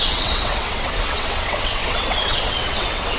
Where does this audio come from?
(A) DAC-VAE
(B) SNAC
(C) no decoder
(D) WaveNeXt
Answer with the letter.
D